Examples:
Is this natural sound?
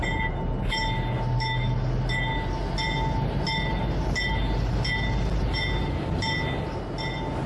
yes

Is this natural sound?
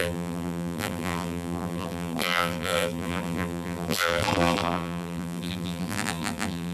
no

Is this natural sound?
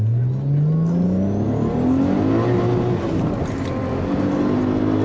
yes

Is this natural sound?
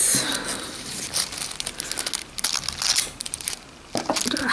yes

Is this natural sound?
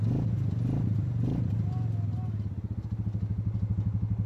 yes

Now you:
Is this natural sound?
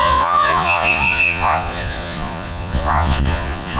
no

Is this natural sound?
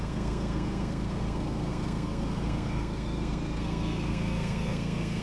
no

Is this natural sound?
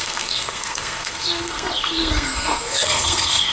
no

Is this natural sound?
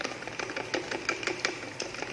yes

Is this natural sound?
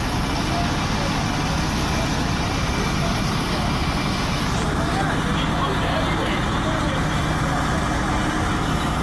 yes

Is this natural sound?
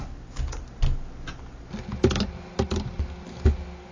yes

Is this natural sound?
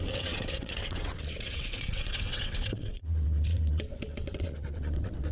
no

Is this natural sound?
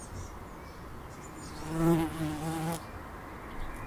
yes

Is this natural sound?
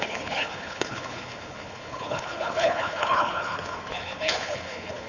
no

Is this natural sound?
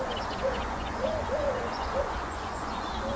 no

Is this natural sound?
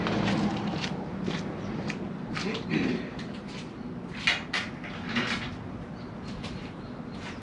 yes